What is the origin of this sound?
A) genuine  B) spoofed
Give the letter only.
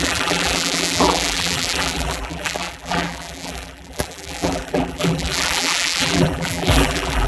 B